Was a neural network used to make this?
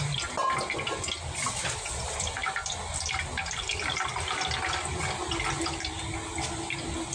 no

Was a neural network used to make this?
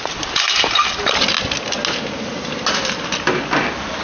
no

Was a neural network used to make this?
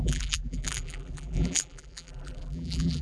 yes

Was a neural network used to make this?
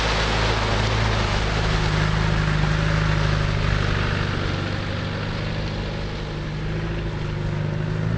no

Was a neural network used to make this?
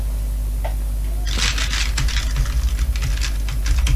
no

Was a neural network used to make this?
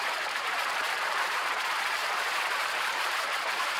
yes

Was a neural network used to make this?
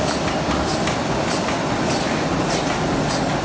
no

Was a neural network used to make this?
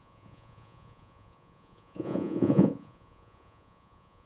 yes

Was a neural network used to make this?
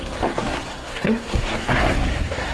yes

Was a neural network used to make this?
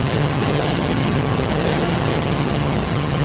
yes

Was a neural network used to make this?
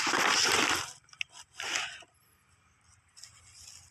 no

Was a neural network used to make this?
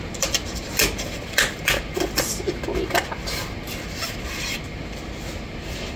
no